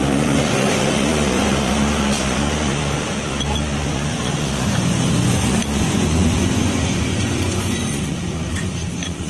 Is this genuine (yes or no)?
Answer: no